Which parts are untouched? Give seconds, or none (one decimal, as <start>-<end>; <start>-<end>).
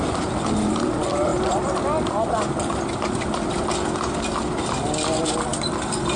0.0-5.5